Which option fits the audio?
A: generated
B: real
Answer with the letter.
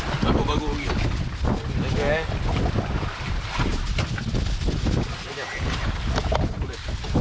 B